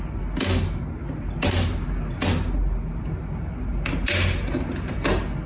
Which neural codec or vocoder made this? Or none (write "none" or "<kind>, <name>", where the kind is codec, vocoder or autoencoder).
none